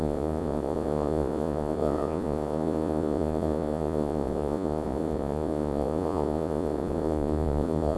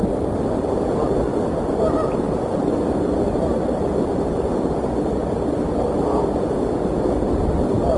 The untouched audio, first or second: second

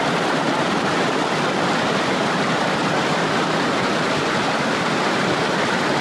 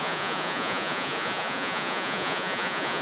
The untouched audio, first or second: first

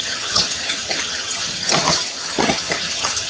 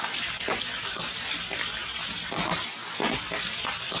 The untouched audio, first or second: second